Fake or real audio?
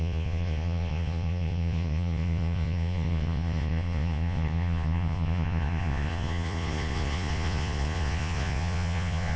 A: fake